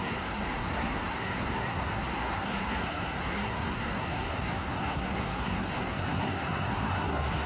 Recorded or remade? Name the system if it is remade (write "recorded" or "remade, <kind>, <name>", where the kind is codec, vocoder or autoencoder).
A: remade, codec, SNAC